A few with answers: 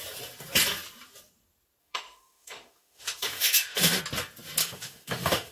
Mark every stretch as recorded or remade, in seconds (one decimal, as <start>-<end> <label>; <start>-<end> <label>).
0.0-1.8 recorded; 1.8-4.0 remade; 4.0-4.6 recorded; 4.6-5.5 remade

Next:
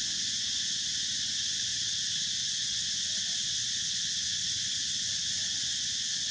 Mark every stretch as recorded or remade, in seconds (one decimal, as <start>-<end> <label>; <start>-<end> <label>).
0.0-1.7 remade; 1.7-2.4 recorded; 2.4-6.3 remade

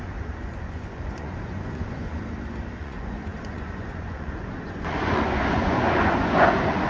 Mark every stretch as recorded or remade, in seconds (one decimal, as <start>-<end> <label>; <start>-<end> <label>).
0.0-2.2 remade; 2.2-2.8 recorded; 2.8-6.9 remade

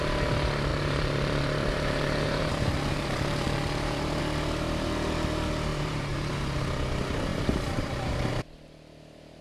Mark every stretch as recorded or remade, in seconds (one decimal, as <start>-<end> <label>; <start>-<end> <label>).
0.0-0.7 recorded; 0.7-4.2 remade; 4.2-5.7 recorded; 5.7-6.3 remade; 6.3-7.3 recorded; 7.3-8.3 remade; 8.3-9.4 recorded